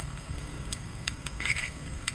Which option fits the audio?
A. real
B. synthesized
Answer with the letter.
B